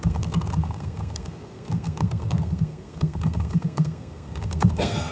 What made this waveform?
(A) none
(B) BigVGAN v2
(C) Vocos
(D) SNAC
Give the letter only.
D